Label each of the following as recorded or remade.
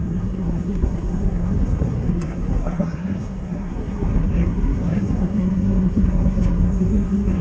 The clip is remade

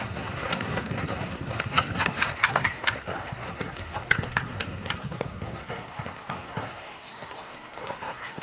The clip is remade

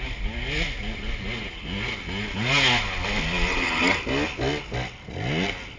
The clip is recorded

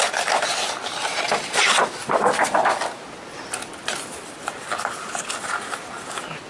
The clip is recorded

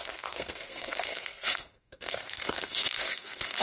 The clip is remade